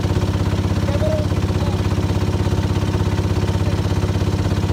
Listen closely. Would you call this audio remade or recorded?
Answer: recorded